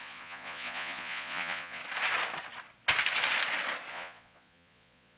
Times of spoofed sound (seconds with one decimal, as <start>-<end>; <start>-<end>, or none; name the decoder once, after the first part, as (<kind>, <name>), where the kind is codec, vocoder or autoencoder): 0.0-1.8 (vocoder, Vocos); 3.9-5.2